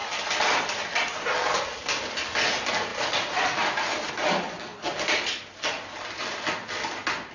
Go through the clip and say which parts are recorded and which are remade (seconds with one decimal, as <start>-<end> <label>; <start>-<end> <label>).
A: 0.0-2.9 recorded; 2.9-4.1 remade; 4.1-4.7 recorded; 4.7-5.4 remade; 5.4-7.3 recorded